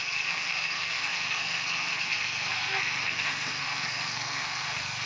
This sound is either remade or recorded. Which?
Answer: remade